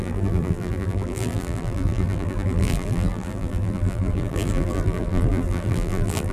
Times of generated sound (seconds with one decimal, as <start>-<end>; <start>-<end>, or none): 0.0-6.3